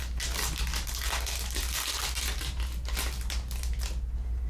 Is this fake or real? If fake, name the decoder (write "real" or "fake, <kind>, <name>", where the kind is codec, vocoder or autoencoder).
real